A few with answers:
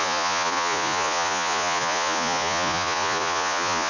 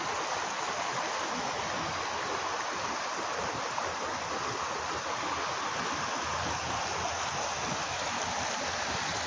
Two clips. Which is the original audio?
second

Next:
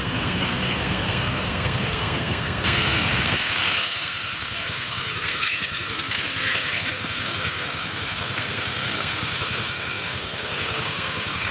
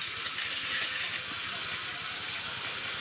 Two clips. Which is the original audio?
second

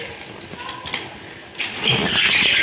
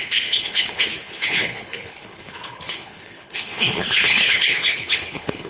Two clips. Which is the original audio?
first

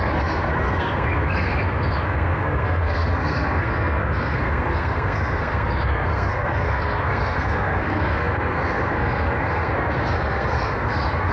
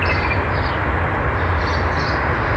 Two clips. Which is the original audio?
second